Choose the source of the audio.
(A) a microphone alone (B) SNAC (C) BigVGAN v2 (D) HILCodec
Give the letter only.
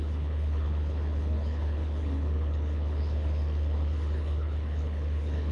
D